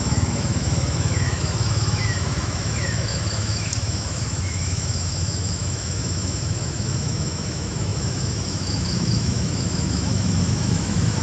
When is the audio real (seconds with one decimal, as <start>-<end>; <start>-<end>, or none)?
none